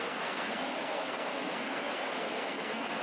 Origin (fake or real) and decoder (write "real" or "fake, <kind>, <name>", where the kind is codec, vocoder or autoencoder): fake, codec, SNAC